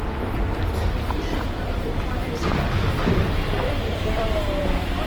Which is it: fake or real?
fake